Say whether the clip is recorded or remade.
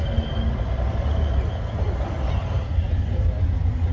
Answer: recorded